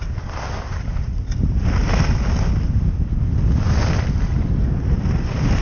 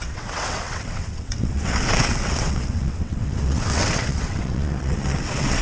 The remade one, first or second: second